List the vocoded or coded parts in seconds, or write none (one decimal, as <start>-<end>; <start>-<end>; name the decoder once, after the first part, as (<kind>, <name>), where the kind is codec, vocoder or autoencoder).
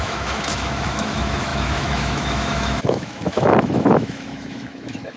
0.0-5.2 (autoencoder, DAC-VAE)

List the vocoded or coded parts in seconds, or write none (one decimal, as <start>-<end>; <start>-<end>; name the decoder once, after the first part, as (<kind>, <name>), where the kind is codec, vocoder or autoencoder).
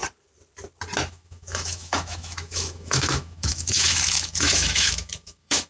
1.1-5.7 (autoencoder, DAC-VAE)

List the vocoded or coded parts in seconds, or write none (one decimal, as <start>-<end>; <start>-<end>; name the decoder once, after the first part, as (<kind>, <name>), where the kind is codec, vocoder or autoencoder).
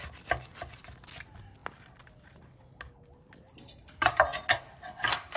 none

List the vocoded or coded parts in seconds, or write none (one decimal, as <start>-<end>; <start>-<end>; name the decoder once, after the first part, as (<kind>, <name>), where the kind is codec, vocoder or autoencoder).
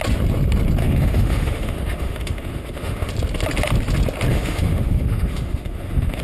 0.8-3.1 (autoencoder, DAC-VAE); 4.3-6.2